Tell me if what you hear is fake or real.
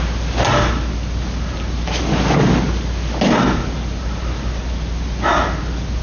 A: real